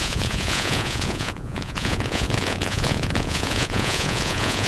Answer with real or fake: fake